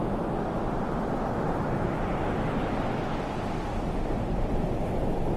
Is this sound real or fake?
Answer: real